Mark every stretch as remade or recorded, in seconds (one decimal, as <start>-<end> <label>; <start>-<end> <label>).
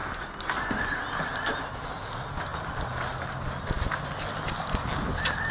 0.0-5.5 recorded